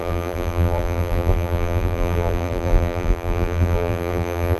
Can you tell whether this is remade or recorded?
remade